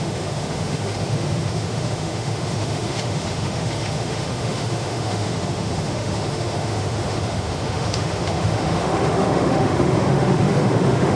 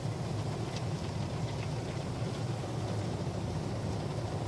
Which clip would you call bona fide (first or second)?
second